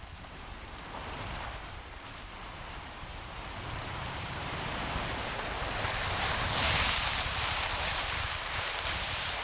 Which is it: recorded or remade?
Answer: remade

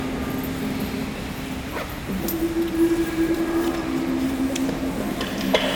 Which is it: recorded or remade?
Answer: recorded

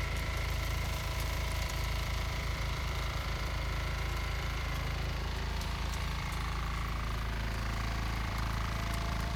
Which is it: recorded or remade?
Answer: remade